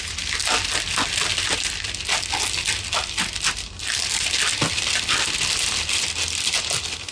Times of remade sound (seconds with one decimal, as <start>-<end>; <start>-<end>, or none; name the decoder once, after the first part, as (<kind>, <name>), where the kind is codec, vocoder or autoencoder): none